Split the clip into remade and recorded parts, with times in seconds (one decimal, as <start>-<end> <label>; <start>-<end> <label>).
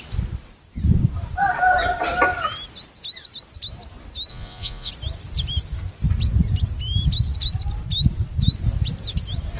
0.0-4.3 recorded; 4.3-4.9 remade; 4.9-9.6 recorded